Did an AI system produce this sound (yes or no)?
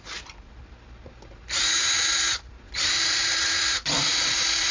no